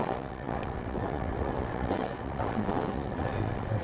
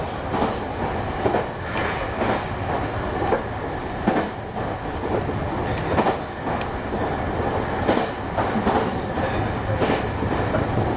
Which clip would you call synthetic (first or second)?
first